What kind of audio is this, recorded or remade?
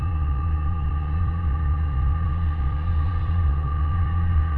remade